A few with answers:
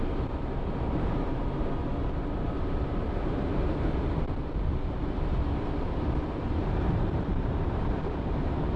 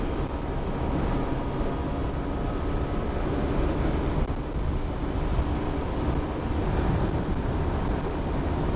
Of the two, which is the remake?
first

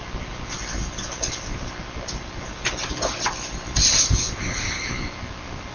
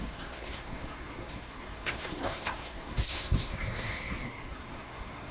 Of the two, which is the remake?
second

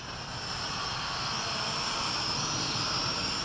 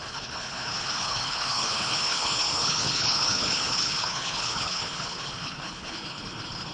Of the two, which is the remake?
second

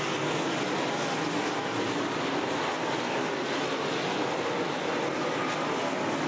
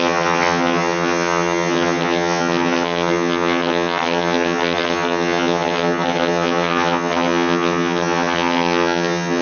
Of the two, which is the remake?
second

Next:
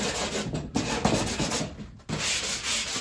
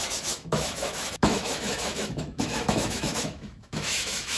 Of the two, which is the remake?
second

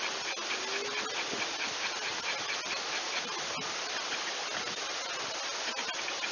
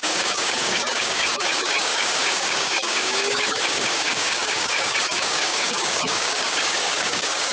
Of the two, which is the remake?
second